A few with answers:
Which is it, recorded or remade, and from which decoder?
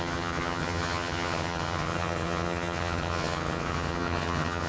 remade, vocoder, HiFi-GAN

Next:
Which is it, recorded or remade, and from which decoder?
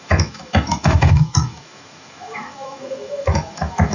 remade, autoencoder, DAC-VAE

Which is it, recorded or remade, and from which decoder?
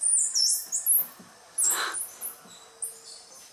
recorded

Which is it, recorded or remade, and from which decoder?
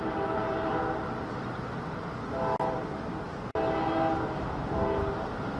recorded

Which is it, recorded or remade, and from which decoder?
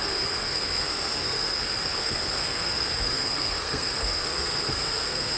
remade, codec, SNAC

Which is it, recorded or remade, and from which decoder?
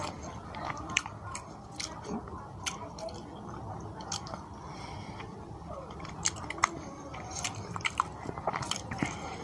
recorded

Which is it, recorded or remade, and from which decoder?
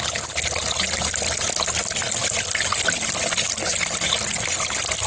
recorded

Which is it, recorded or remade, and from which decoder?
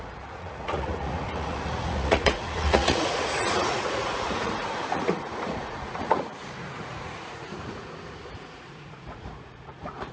remade, vocoder, Vocos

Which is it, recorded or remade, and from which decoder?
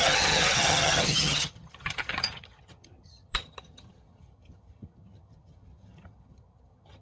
remade, vocoder, HiFi-GAN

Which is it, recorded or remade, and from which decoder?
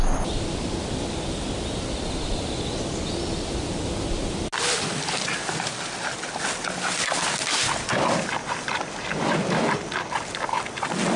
recorded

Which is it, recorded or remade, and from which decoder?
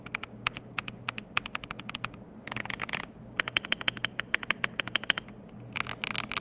recorded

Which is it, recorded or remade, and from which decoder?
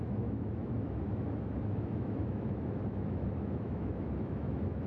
remade, autoencoder, DAC-VAE